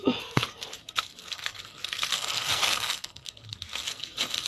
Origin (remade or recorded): remade